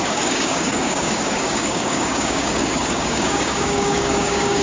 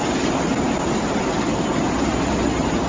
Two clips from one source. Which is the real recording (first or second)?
second